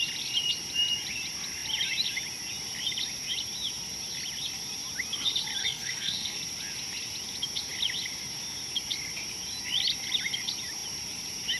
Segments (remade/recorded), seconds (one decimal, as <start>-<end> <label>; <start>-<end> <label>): 0.0-5.6 recorded; 5.6-6.4 remade; 6.4-11.6 recorded